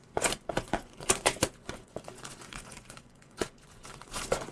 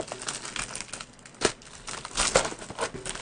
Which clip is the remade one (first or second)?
first